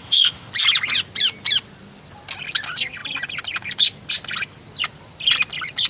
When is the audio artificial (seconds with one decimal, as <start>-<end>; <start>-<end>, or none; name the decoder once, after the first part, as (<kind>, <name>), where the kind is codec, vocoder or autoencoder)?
0.0-0.5 (codec, ZipCodec)